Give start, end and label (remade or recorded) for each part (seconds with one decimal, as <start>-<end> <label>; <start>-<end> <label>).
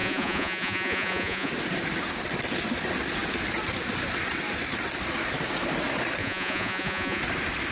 0.0-1.5 remade; 1.5-6.2 recorded; 6.2-7.2 remade; 7.2-7.7 recorded